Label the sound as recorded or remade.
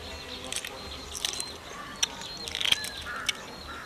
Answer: recorded